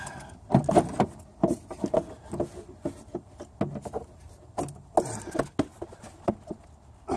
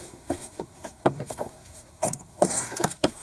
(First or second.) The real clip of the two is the first